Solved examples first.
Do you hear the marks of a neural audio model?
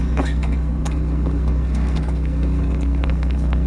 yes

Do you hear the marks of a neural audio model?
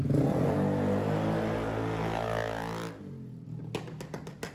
no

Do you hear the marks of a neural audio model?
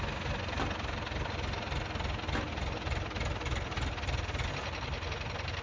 no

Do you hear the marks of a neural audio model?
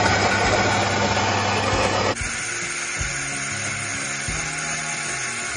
no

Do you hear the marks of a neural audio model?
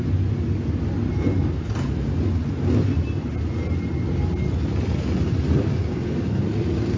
no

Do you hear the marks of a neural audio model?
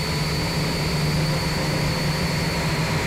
no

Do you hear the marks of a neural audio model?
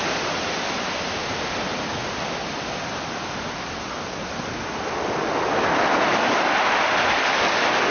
no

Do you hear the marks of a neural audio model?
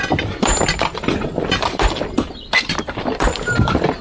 yes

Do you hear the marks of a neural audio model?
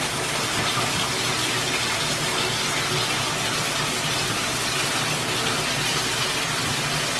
no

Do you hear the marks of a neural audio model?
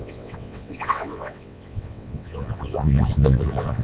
yes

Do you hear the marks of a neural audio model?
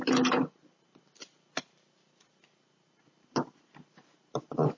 no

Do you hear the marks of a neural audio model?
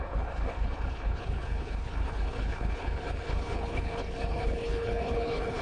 yes